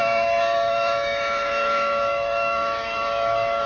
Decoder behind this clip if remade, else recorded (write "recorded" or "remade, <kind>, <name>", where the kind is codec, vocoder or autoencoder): remade, autoencoder, DAC-VAE